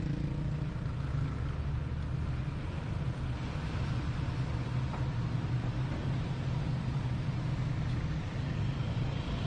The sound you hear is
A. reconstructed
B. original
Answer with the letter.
B